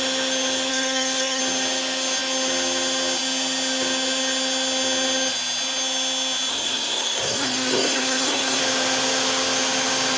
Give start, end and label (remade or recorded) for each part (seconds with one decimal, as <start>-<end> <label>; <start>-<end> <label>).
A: 0.0-0.7 recorded; 0.7-1.4 remade; 1.4-6.5 recorded; 6.5-8.6 remade; 8.6-10.2 recorded